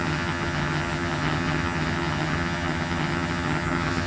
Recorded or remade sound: remade